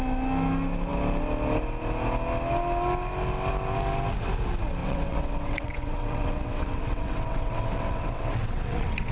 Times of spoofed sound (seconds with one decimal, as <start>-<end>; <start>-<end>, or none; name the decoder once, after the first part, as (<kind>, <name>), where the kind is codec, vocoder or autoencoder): 4.8-9.1 (vocoder, WaveNeXt)